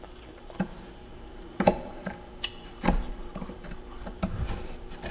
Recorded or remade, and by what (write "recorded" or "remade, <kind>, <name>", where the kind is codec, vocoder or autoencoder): remade, vocoder, BigVGAN v2